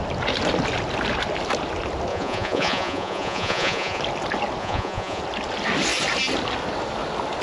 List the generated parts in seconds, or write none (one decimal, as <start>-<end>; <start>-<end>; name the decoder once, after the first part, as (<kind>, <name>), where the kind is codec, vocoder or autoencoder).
2.1-4.0 (vocoder, Vocos); 4.6-5.2